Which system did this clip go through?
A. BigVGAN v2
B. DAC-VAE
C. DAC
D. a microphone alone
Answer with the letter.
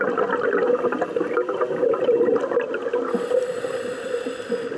D